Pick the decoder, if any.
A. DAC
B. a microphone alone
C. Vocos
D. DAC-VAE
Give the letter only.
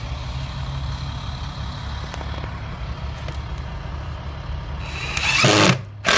B